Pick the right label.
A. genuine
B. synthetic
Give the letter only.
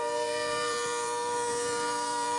B